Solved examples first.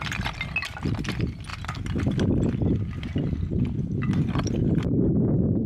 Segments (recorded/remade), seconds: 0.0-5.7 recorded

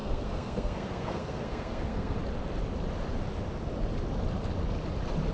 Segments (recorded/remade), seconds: 0.0-2.2 remade; 2.2-5.3 recorded

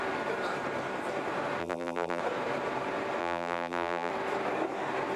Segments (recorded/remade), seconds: 0.0-1.6 recorded; 1.6-2.2 remade; 2.2-3.2 recorded; 3.2-4.1 remade; 4.1-5.2 recorded

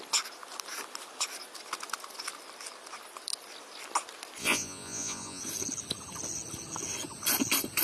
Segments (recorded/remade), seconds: 0.0-4.4 recorded; 4.4-5.4 remade; 5.4-7.8 recorded